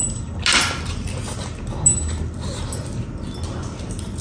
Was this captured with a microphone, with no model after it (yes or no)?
yes